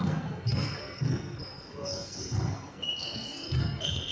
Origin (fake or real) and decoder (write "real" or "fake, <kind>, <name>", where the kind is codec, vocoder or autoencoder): fake, codec, SNAC